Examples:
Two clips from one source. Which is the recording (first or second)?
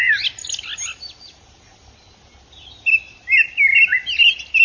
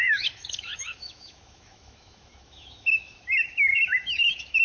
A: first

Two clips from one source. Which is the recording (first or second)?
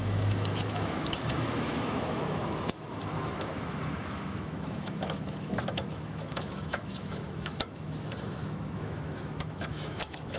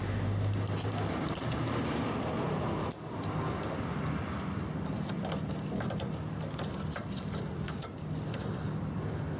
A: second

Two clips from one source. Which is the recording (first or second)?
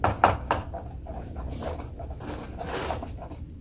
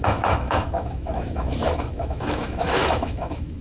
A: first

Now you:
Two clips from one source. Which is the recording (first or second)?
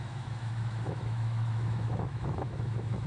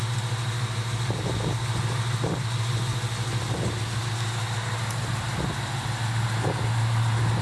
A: second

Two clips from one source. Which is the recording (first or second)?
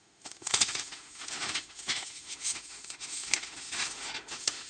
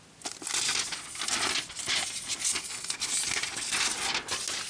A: second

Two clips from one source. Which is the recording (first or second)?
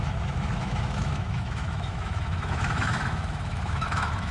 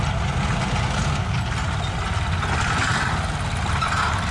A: second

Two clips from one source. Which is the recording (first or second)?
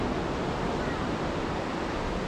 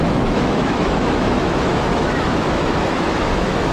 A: first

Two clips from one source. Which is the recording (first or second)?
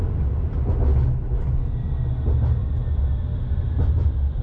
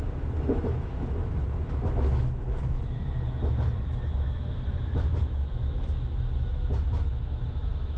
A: first